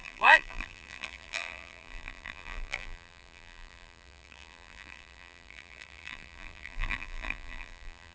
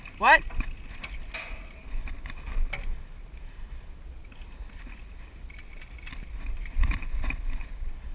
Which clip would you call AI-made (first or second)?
first